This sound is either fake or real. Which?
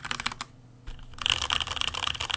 real